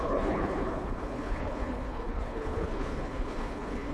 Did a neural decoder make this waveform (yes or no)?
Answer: yes